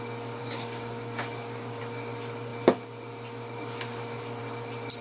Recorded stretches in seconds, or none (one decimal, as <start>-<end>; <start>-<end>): 0.0-0.4; 1.8-5.0